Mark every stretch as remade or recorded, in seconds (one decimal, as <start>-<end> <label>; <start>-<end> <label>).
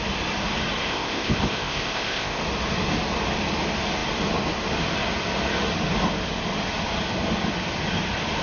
0.0-0.8 recorded; 0.8-2.4 remade; 2.4-8.4 recorded